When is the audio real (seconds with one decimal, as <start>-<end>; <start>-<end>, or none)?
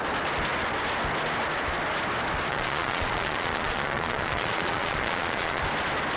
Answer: 0.0-2.5; 5.6-6.2